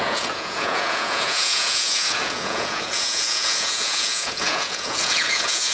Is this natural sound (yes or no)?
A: no